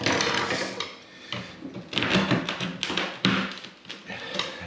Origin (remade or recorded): recorded